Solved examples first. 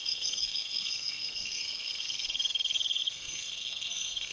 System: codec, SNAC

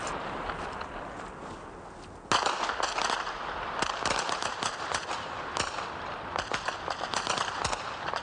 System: none